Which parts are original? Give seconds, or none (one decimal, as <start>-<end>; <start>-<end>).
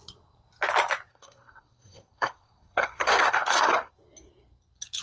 0.0-1.1; 3.9-5.0